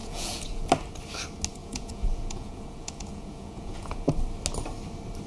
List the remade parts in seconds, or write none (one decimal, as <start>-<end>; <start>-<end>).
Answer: 0.0-0.7; 1.6-4.1